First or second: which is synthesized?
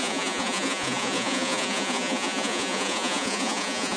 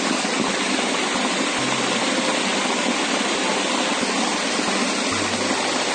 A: first